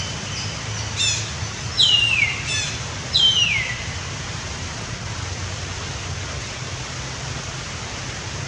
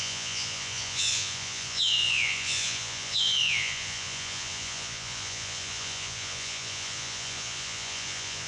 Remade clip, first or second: second